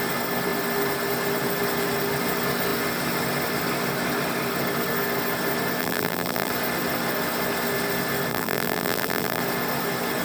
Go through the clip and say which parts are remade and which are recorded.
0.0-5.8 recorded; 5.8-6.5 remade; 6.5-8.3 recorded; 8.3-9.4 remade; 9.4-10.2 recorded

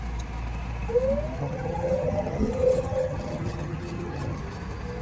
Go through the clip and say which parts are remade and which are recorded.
0.0-1.4 recorded; 1.4-4.4 remade; 4.4-5.0 recorded

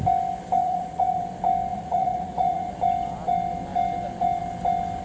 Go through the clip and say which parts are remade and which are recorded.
0.0-0.6 recorded; 0.6-1.2 remade; 1.2-1.7 recorded; 1.7-2.7 remade; 2.7-5.0 recorded